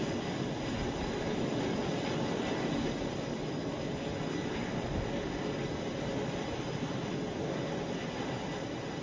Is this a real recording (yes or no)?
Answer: yes